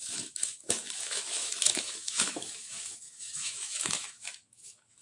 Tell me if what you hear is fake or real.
fake